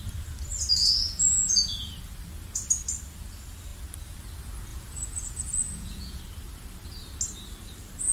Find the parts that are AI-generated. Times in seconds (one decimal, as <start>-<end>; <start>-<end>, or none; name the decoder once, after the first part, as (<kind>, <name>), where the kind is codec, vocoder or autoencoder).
0.8-2.0 (vocoder, Vocos); 4.7-6.2